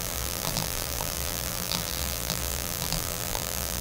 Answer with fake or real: fake